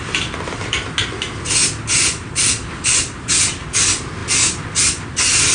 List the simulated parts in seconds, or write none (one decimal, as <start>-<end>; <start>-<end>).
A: 1.9-3.3